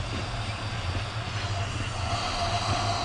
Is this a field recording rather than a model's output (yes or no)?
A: yes